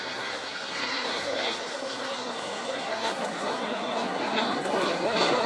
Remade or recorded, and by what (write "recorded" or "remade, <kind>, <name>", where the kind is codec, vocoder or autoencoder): remade, codec, SNAC